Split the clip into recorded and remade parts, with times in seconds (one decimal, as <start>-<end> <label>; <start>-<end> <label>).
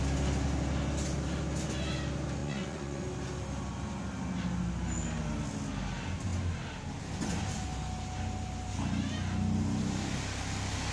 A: 0.0-2.4 recorded; 2.4-3.0 remade; 3.0-10.9 recorded